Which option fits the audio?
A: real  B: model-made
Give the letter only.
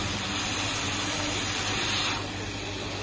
A